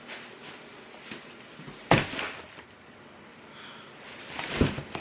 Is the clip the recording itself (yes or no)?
yes